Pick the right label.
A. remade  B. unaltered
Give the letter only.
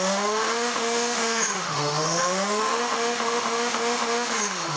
A